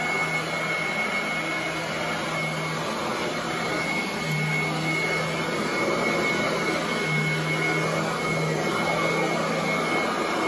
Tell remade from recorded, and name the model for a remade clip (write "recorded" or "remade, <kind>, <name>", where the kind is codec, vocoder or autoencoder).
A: recorded